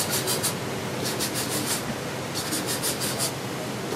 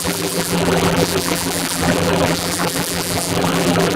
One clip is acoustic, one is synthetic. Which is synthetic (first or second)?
second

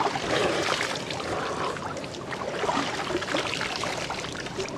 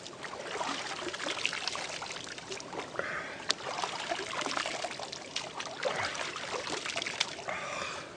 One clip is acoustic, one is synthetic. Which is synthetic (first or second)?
first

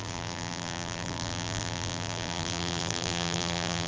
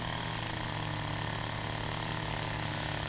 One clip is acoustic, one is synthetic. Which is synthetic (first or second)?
first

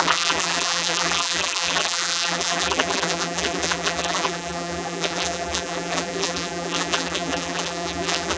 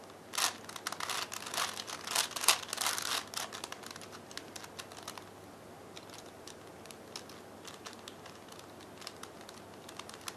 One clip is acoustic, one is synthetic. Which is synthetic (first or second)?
first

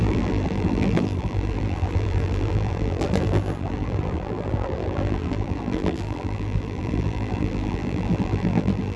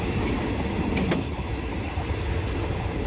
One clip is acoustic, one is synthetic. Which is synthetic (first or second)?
first